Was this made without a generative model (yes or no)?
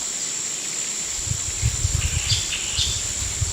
yes